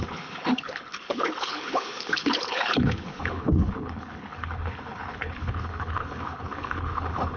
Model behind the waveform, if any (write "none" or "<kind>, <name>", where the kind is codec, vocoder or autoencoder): codec, HILCodec